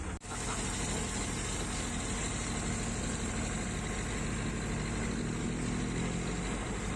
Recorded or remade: recorded